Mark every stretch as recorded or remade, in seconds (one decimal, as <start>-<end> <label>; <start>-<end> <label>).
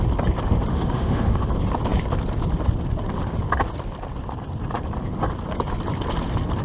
0.0-0.7 recorded; 0.7-1.5 remade; 1.5-6.6 recorded